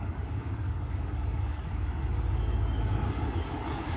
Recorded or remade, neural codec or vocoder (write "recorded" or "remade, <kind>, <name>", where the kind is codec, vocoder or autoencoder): remade, codec, DAC